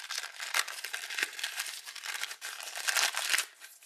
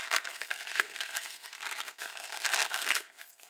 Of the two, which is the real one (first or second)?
first